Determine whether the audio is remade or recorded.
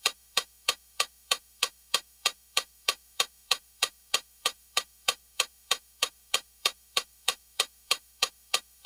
remade